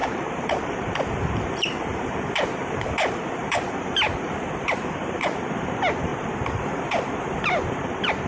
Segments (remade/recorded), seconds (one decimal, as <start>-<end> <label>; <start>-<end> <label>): 0.0-6.1 remade; 6.1-7.7 recorded; 7.7-8.3 remade